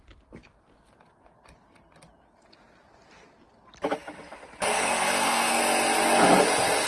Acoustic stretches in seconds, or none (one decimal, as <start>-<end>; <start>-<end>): 0.0-4.7; 5.6-6.9

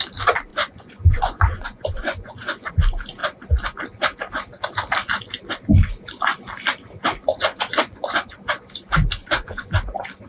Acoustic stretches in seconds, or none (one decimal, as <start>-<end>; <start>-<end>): 0.0-0.5; 2.7-7.3; 8.3-9.2; 9.7-10.3